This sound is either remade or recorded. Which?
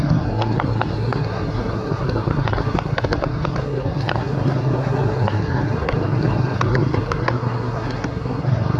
remade